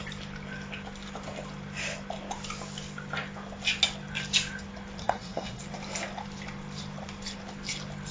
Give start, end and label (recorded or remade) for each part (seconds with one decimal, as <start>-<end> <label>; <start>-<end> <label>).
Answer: 0.0-5.0 recorded; 5.0-5.6 remade; 5.6-8.1 recorded